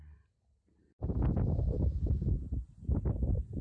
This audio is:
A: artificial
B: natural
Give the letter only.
B